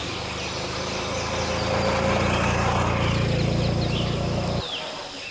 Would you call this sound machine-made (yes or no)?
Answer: no